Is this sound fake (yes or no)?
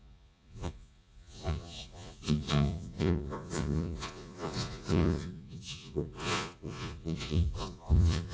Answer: yes